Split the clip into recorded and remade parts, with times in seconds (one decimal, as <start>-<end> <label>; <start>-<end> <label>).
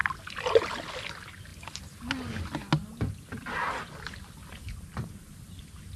0.0-6.0 recorded